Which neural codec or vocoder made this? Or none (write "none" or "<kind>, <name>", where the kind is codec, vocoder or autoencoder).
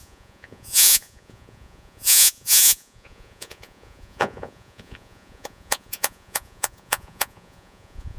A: vocoder, Vocos